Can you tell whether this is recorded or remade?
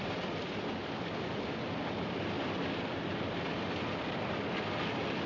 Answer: recorded